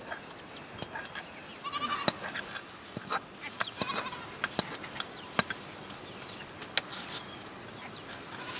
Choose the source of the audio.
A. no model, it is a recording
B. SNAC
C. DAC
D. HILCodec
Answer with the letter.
A